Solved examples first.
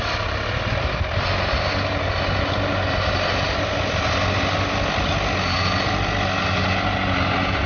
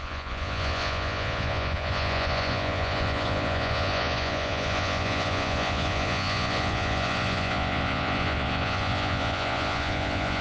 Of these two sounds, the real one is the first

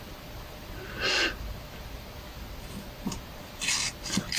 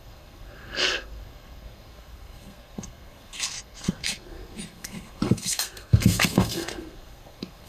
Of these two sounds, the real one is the first